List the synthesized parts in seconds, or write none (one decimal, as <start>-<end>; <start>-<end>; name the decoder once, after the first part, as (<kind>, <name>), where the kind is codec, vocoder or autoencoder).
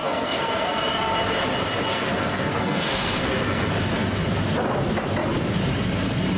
0.0-1.1 (codec, SNAC); 1.9-3.7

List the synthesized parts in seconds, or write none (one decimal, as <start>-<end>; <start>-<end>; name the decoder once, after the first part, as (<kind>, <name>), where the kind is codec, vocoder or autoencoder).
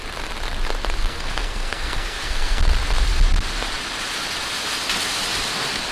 1.0-2.6 (codec, SNAC)